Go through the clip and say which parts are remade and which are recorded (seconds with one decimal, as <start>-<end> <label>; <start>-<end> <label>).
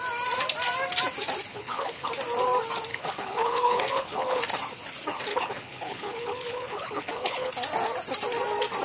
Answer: 0.0-1.5 recorded; 1.5-2.1 remade; 2.1-2.9 recorded; 2.9-4.4 remade; 4.4-5.3 recorded; 5.3-7.5 remade; 7.5-8.8 recorded